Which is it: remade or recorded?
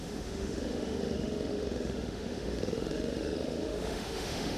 remade